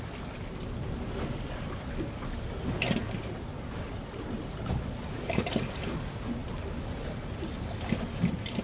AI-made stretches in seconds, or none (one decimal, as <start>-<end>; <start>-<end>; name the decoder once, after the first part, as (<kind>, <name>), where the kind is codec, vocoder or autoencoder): none